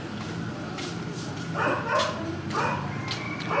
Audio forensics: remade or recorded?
recorded